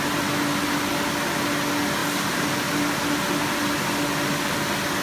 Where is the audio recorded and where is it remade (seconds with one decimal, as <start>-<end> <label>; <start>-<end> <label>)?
0.0-5.0 recorded

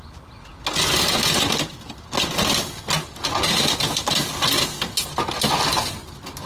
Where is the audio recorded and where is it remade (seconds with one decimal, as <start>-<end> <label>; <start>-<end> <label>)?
0.0-6.5 recorded

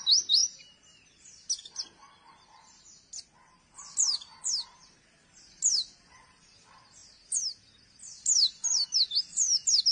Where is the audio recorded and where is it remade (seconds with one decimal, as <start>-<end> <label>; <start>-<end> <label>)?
0.0-9.9 recorded

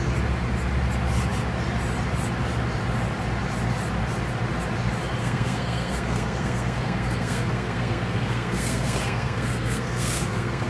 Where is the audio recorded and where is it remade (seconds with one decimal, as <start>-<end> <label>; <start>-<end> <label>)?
0.0-5.2 recorded; 5.2-10.7 remade

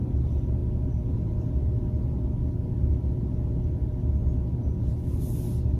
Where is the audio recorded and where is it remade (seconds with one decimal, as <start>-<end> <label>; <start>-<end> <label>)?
0.0-5.8 recorded

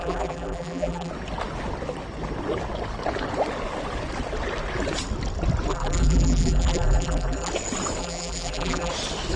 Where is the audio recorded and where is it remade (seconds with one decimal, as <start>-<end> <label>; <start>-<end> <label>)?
0.0-1.1 remade; 1.1-5.7 recorded; 5.7-7.5 remade; 7.5-8.0 recorded; 8.0-8.9 remade; 8.9-9.4 recorded

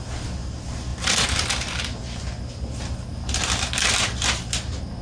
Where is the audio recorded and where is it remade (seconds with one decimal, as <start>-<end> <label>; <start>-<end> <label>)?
0.0-5.0 recorded